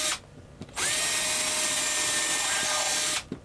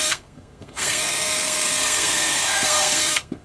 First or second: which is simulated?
second